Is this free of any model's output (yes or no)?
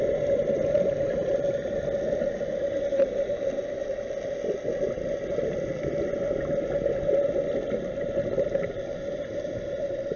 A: yes